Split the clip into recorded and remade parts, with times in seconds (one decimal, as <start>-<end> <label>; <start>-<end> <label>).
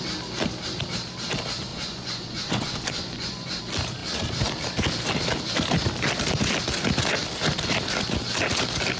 0.0-1.7 recorded; 1.7-3.6 remade; 3.6-9.0 recorded